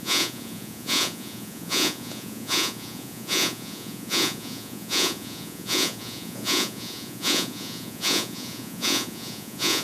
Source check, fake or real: fake